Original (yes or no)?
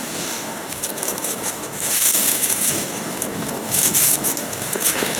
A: no